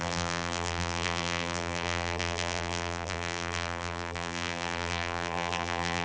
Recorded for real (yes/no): no